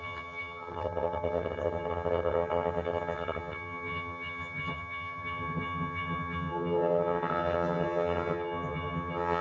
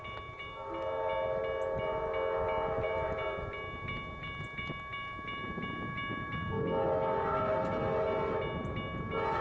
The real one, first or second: second